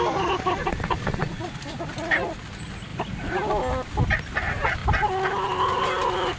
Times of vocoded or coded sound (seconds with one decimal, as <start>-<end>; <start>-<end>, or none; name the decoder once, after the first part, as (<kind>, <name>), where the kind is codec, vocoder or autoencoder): 0.6-1.4 (vocoder, Vocos)